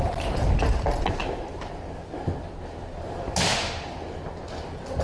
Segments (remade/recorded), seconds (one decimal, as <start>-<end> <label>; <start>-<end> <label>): 0.0-5.0 recorded